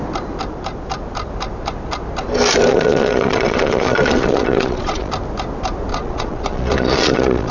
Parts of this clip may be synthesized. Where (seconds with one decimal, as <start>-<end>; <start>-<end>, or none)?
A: 2.7-5.1; 5.9-7.5